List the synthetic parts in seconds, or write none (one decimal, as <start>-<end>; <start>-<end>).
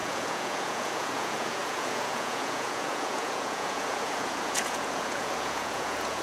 0.0-6.2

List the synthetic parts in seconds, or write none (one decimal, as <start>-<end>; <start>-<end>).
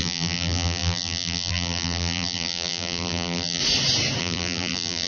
0.0-3.6; 4.2-5.1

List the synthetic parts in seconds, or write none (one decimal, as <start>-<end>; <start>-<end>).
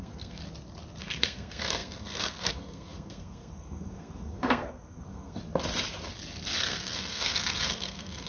0.0-0.4; 1.0-5.4; 6.6-8.3